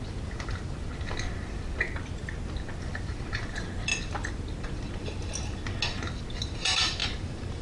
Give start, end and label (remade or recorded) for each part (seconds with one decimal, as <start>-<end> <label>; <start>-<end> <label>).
0.0-0.9 remade; 0.9-3.0 recorded; 3.0-3.9 remade; 3.9-6.4 recorded; 6.4-7.6 remade

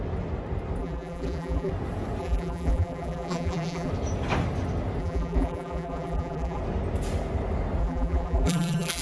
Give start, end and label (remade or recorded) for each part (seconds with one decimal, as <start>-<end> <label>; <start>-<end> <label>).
0.0-0.8 recorded; 0.8-1.7 remade; 1.7-2.2 recorded; 2.2-3.9 remade; 3.9-5.0 recorded; 5.0-6.6 remade; 6.6-7.8 recorded; 7.8-9.0 remade